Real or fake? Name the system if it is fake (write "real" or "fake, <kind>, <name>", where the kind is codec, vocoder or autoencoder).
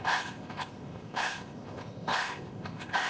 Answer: fake, codec, ZipCodec